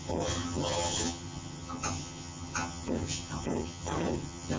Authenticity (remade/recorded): remade